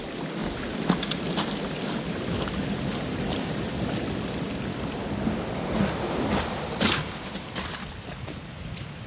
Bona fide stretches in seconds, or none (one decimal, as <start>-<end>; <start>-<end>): 0.0-9.1